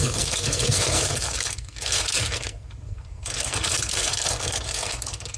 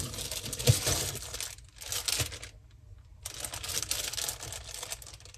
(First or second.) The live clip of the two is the second